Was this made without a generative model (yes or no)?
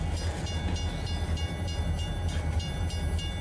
yes